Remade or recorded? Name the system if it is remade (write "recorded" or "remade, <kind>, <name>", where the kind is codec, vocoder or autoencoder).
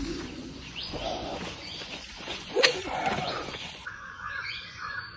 remade, vocoder, Vocos